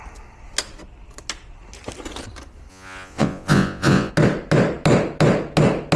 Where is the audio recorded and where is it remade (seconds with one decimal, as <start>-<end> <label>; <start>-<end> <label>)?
0.0-2.7 recorded; 2.7-4.1 remade; 4.1-6.0 recorded